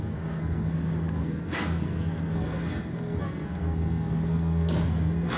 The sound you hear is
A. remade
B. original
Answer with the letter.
A